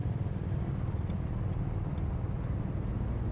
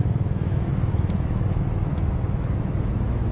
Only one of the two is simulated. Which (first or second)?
second